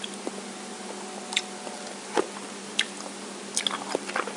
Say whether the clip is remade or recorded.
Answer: recorded